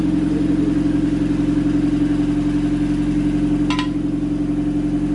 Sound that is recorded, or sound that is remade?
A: recorded